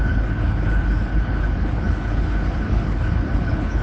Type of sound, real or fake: fake